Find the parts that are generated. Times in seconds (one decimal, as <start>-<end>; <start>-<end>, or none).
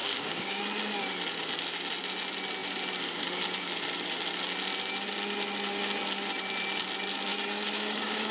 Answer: 0.0-0.6; 7.3-8.3